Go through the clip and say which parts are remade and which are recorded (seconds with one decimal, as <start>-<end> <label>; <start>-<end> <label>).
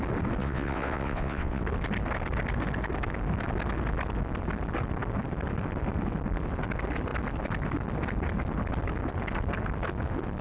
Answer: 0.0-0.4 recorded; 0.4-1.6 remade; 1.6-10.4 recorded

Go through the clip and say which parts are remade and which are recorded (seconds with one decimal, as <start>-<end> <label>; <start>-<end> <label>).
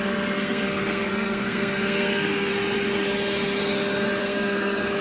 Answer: 0.0-2.5 remade; 2.5-4.2 recorded; 4.2-5.0 remade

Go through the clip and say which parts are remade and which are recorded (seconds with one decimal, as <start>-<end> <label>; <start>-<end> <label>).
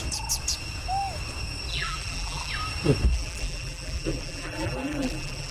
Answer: 0.0-1.7 recorded; 1.7-2.5 remade; 2.5-3.1 recorded; 3.1-5.5 remade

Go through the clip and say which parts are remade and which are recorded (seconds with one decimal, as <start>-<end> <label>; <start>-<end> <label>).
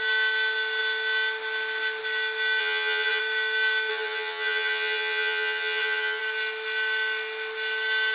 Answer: 0.0-2.6 recorded; 2.6-3.2 remade; 3.2-3.9 recorded; 3.9-6.2 remade; 6.2-8.1 recorded